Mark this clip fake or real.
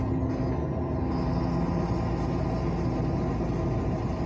real